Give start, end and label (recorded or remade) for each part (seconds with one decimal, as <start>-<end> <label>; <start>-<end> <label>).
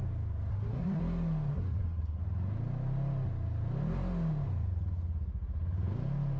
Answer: 0.0-0.5 recorded; 0.5-1.0 remade; 1.0-1.5 recorded; 1.5-2.2 remade; 2.2-6.4 recorded